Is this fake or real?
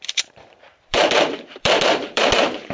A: fake